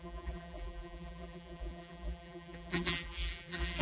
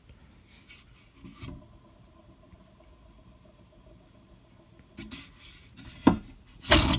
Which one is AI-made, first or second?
first